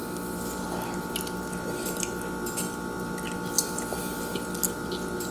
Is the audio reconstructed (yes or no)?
no